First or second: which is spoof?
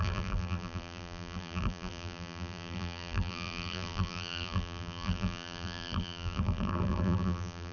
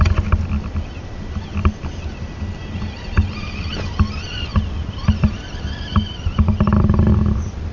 first